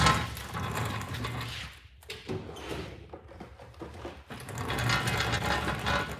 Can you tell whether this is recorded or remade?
recorded